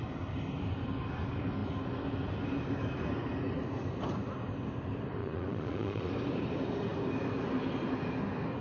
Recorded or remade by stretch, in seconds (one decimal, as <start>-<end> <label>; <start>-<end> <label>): 0.0-5.2 recorded; 5.2-6.1 remade; 6.1-8.6 recorded